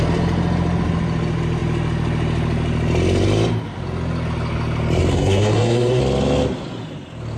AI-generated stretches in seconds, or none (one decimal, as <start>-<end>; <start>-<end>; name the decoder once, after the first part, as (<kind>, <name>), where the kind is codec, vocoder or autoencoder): 5.1-6.0 (codec, SNAC)

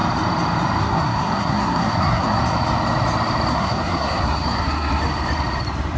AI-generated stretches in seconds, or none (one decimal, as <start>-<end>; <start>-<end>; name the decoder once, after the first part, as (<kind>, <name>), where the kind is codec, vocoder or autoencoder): 0.8-2.4 (codec, SNAC); 3.5-5.0